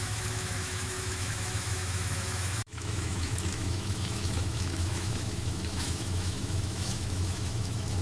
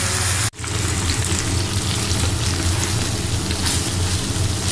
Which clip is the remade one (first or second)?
first